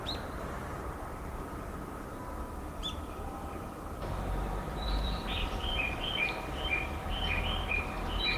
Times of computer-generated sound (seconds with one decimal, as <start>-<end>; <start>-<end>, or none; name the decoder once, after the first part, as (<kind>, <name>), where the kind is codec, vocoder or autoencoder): 0.0-0.6 (vocoder, BigVGAN v2); 3.0-8.4